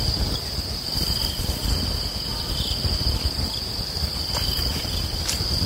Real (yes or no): yes